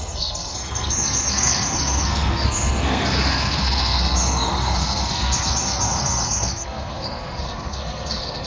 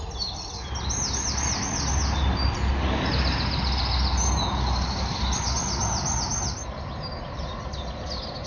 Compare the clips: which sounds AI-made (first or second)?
first